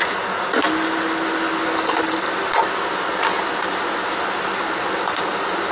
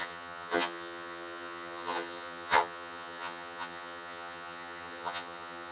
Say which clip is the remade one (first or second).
second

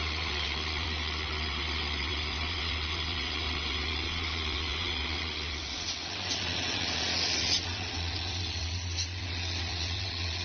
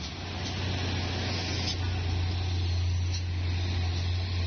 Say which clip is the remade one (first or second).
first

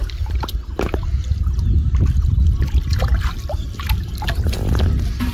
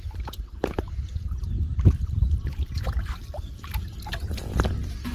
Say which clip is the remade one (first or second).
second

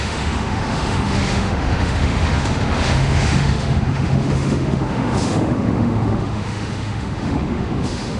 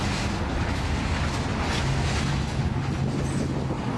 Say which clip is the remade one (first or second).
first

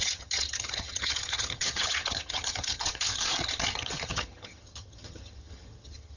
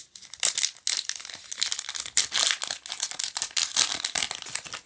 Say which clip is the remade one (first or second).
first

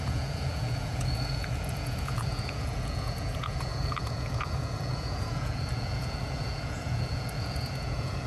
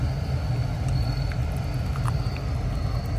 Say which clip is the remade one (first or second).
first